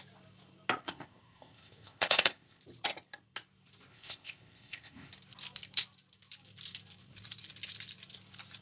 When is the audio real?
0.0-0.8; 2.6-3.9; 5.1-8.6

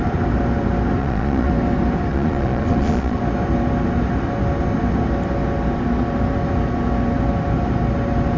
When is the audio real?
0.0-1.0; 1.5-2.1; 3.2-8.4

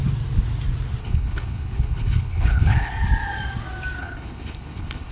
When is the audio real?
0.0-1.0; 2.9-4.0

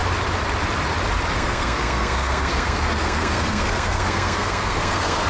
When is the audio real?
0.0-1.3

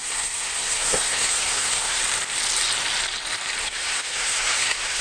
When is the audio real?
2.0-3.6